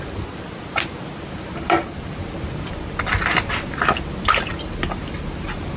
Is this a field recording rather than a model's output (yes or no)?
yes